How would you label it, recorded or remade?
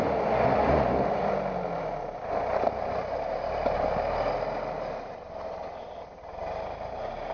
recorded